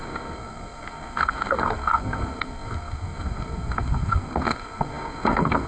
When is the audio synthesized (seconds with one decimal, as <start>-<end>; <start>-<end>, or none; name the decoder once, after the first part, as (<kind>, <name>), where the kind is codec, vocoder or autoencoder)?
0.0-5.7 (codec, SNAC)